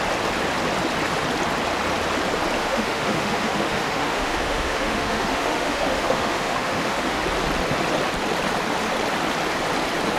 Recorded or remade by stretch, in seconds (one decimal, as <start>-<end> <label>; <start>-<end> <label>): 0.0-2.6 recorded; 2.6-7.2 remade; 7.2-10.2 recorded